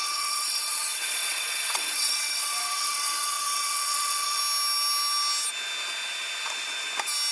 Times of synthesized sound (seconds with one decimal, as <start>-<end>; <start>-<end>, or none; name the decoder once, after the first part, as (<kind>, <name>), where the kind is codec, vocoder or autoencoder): 0.0-4.4 (vocoder, WaveNeXt)